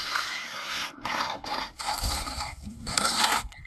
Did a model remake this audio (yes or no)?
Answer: yes